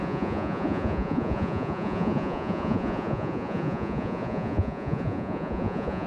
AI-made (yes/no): yes